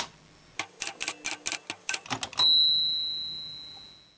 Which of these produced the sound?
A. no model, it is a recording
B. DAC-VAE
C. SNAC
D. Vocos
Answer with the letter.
A